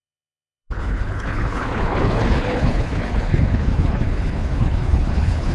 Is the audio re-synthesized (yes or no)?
yes